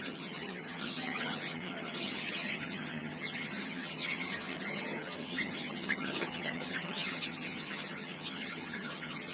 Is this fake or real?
fake